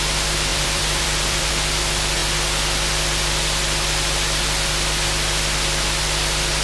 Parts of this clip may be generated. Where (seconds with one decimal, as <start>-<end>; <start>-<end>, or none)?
0.5-1.5